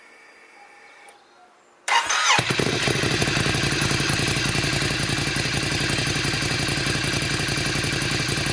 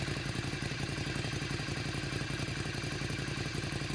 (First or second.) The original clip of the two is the first